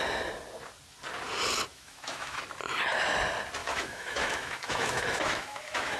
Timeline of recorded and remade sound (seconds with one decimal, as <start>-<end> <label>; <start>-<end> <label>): 0.0-1.7 recorded; 1.7-2.4 remade; 2.4-3.6 recorded; 3.6-6.0 remade